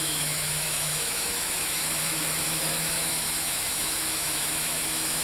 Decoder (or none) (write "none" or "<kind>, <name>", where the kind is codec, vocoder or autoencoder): autoencoder, DAC-VAE